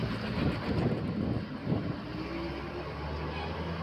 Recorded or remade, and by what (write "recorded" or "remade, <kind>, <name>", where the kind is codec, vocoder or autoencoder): recorded